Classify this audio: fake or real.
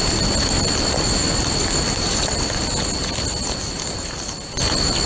real